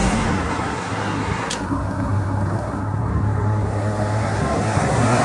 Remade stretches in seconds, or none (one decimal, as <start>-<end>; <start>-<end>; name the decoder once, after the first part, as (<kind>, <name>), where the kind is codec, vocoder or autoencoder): 0.0-5.2 (codec, SNAC)